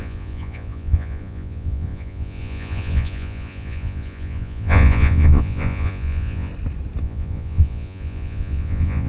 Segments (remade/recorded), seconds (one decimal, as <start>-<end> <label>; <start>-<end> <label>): 0.0-6.5 remade; 6.5-7.0 recorded; 7.0-9.1 remade